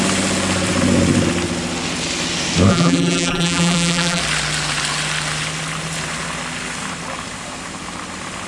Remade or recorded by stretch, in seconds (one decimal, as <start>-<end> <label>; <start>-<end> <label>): 0.0-2.7 recorded; 2.7-4.2 remade; 4.2-8.5 recorded